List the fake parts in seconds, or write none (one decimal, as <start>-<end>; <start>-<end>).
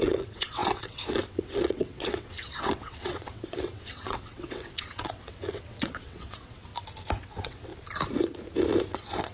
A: 0.0-6.7; 7.2-7.7; 8.9-9.3